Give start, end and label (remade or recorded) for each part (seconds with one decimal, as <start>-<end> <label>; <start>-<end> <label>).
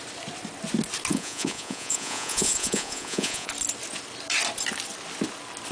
0.0-1.1 recorded; 1.1-3.5 remade; 3.5-5.7 recorded